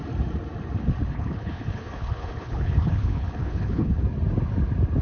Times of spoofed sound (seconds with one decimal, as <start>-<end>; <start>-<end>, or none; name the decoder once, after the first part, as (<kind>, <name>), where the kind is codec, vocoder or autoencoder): 1.1-4.0 (codec, HILCodec)